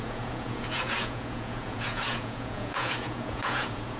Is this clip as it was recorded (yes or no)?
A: no